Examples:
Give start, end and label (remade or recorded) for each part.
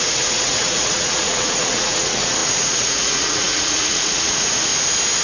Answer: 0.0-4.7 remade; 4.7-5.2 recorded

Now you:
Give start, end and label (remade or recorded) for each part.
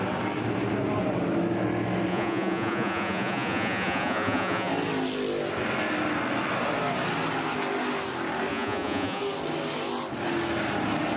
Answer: 0.0-2.1 recorded; 2.1-4.7 remade; 4.7-8.5 recorded; 8.5-9.2 remade; 9.2-11.2 recorded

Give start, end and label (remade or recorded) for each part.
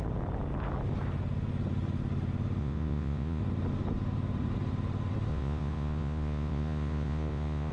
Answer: 0.0-2.6 recorded; 2.6-3.4 remade; 3.4-5.3 recorded; 5.3-7.7 remade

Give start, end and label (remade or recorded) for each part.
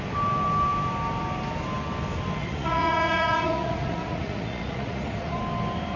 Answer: 0.0-2.4 recorded; 2.4-5.4 remade; 5.4-6.0 recorded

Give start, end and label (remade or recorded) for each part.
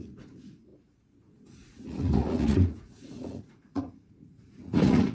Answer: 0.0-5.1 remade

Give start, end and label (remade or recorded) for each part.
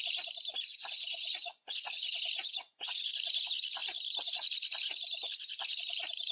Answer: 0.0-0.7 recorded; 0.7-3.1 remade; 3.1-6.3 recorded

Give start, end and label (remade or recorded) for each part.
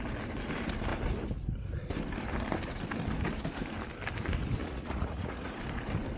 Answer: 0.0-4.6 recorded; 4.6-5.6 remade; 5.6-6.2 recorded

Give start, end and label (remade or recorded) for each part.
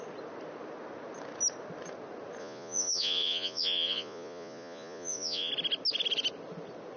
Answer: 0.0-2.4 recorded; 2.4-5.5 remade; 5.5-7.0 recorded